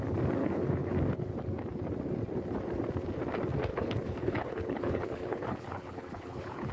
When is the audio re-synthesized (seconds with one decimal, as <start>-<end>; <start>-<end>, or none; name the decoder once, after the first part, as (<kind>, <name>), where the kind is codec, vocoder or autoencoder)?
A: 0.4-0.9 (codec, HILCodec); 3.7-6.7